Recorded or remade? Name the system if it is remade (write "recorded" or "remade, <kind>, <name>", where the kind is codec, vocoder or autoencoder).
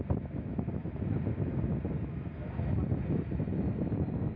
recorded